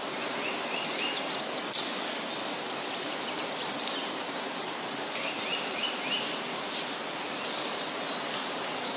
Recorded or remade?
recorded